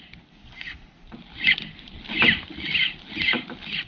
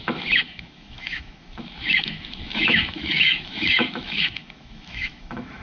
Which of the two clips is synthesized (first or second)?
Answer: second